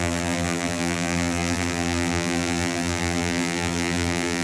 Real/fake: fake